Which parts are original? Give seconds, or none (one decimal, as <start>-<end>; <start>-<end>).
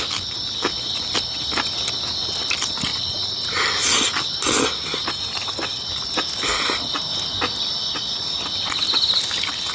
0.0-9.7